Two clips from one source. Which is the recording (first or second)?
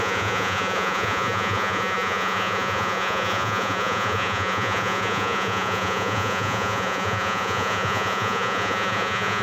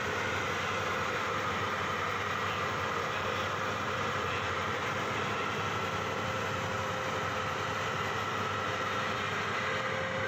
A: second